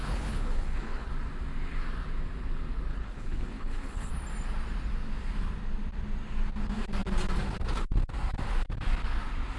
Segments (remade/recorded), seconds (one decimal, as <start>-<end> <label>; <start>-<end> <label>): 0.0-1.1 remade; 1.1-2.9 recorded; 2.9-4.1 remade; 4.1-9.6 recorded